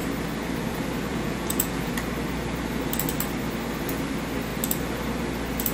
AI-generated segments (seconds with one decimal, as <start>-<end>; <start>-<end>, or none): 1.1-1.9